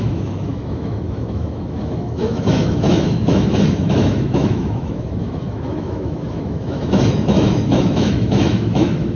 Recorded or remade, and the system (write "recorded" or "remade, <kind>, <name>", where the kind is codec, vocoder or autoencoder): remade, autoencoder, DAC-VAE